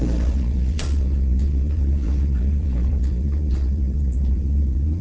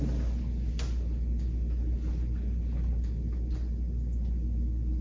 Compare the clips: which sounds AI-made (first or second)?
first